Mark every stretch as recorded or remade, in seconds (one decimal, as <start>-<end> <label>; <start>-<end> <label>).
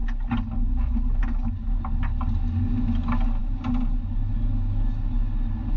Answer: 0.0-5.8 recorded